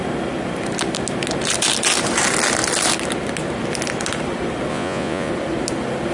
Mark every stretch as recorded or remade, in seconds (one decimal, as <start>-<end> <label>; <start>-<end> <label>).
0.0-4.7 recorded; 4.7-5.3 remade; 5.3-6.1 recorded